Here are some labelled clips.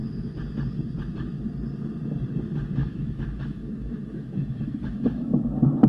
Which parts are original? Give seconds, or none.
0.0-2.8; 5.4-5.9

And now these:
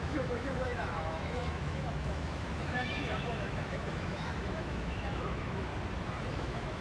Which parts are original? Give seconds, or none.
5.7-6.3

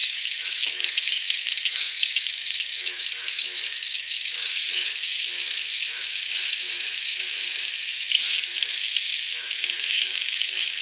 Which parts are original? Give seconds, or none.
none

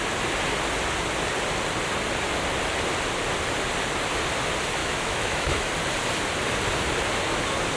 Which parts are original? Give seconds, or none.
0.0-4.8; 5.7-7.8

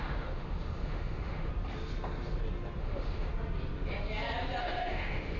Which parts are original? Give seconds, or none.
1.5-2.8; 3.3-4.6

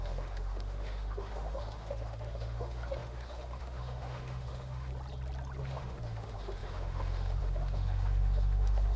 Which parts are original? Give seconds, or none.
4.9-5.6

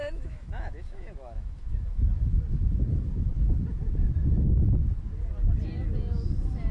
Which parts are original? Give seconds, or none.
2.0-6.7